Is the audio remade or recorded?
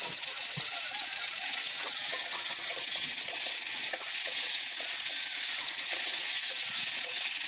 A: remade